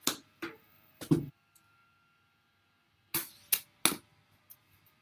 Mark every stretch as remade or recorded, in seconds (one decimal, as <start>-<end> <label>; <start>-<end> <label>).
0.0-1.8 remade; 1.8-4.6 recorded; 4.6-5.0 remade